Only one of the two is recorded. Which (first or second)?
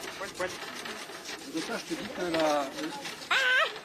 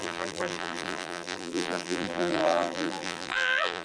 first